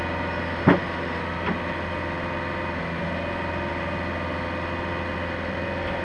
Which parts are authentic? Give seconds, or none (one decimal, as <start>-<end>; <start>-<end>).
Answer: 0.0-6.0